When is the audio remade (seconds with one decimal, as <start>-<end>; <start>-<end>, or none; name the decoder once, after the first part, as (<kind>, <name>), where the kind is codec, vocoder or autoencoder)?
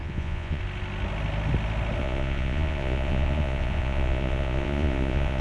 0.0-0.6 (vocoder, Vocos); 2.0-5.4